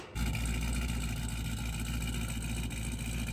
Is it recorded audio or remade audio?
recorded